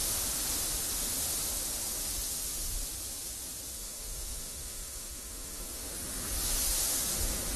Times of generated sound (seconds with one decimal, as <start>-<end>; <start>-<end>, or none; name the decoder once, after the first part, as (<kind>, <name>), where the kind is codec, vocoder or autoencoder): 3.8-5.9 (autoencoder, DAC-VAE)